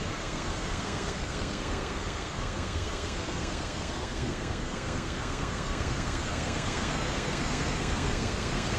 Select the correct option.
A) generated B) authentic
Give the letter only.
A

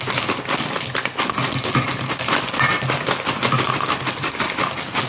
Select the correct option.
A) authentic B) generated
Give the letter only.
A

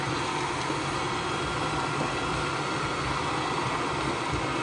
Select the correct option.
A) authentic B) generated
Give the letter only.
A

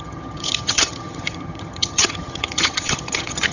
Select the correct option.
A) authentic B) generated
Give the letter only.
B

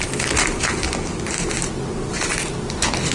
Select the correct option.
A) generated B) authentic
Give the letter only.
B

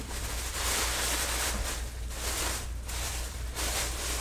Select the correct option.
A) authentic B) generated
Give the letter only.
A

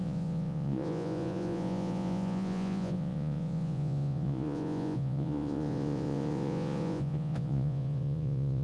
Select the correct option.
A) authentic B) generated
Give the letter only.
B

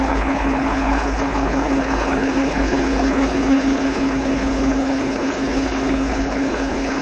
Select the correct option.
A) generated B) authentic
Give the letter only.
A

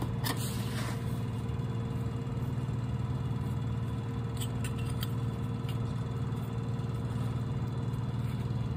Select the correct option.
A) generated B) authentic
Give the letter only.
B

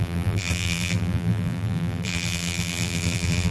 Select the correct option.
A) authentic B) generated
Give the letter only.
B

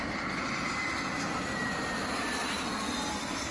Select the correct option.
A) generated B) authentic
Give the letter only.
B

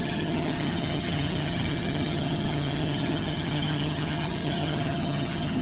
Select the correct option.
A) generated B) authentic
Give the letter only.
A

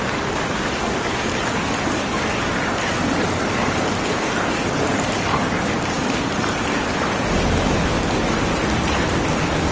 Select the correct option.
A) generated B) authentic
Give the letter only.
B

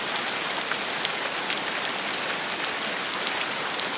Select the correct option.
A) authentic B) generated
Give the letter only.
A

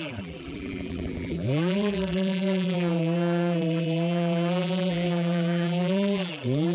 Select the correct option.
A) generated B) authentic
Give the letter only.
A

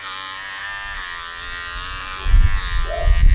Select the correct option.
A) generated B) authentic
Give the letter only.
B